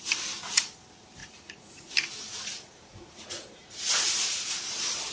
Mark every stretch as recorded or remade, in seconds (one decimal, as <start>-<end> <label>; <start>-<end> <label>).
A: 0.0-1.2 recorded; 1.2-1.9 remade; 1.9-2.5 recorded; 2.5-4.5 remade; 4.5-5.1 recorded